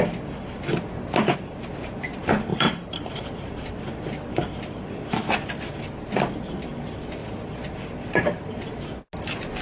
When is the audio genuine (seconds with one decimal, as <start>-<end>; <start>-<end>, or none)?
0.0-2.5; 3.7-9.6

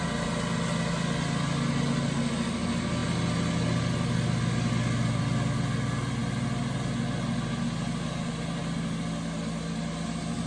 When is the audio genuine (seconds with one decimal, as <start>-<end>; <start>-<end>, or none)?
0.0-10.5

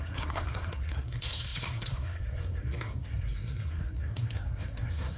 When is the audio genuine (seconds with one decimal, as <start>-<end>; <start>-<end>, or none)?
none